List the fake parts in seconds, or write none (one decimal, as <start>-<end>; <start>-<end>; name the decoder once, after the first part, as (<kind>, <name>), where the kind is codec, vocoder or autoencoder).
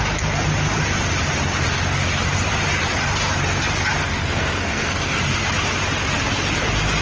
4.0-5.2 (codec, SNAC)